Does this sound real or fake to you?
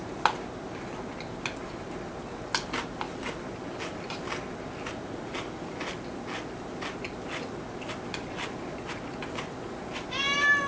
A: real